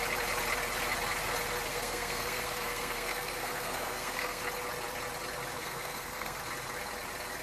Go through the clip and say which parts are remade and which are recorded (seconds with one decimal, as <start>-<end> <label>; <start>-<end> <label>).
0.0-1.7 recorded; 1.7-4.4 remade; 4.4-5.6 recorded; 5.6-6.4 remade; 6.4-7.4 recorded

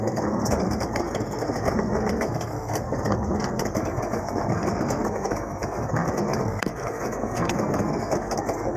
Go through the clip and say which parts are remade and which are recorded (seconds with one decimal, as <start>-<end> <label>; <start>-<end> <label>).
0.0-8.8 remade

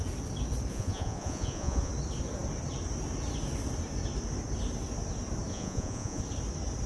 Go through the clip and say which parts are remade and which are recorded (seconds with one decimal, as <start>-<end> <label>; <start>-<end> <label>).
0.0-0.7 recorded; 0.7-1.9 remade; 1.9-5.5 recorded; 5.5-6.2 remade; 6.2-6.9 recorded

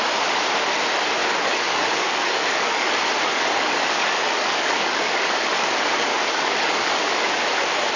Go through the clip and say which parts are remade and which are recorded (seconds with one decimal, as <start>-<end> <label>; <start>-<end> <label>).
0.0-1.2 recorded; 1.2-2.9 remade; 2.9-3.3 recorded; 3.3-7.5 remade; 7.5-8.0 recorded